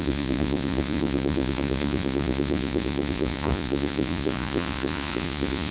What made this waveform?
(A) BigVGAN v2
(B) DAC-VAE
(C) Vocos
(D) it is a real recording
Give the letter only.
C